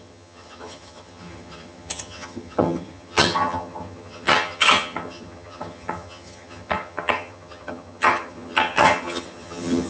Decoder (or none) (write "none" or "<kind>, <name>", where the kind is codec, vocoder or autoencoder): vocoder, HiFi-GAN